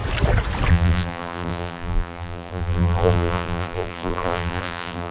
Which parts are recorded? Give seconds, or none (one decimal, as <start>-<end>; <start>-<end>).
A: 0.0-0.7